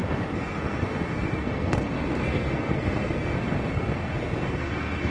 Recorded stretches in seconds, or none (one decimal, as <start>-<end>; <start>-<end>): none